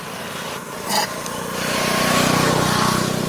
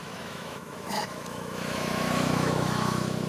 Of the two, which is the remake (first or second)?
second